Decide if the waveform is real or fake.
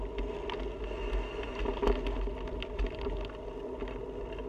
real